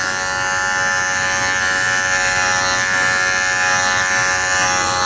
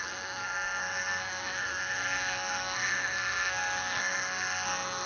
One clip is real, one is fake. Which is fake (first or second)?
second